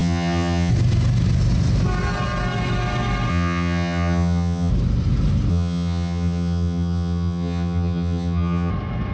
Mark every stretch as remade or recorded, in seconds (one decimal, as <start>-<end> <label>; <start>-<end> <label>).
0.0-0.7 remade; 0.7-3.3 recorded; 3.3-4.7 remade; 4.7-5.5 recorded; 5.5-8.7 remade; 8.7-9.1 recorded